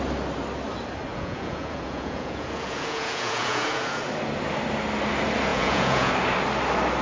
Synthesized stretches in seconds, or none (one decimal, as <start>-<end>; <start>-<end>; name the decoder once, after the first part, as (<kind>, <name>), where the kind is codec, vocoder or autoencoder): 1.1-4.0 (vocoder, Vocos); 5.5-6.1